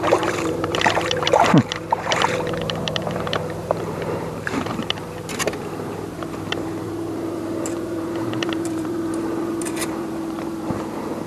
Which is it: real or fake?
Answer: fake